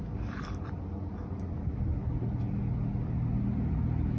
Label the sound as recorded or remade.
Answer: recorded